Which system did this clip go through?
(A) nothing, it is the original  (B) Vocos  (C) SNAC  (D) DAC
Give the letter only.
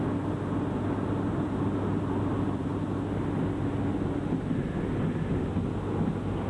A